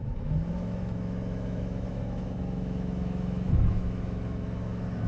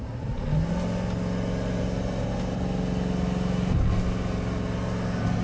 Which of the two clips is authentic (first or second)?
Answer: second